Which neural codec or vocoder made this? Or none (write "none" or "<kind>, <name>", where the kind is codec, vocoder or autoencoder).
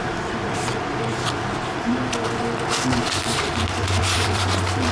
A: vocoder, BigVGAN v2